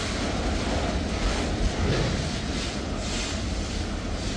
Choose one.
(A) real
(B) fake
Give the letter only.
A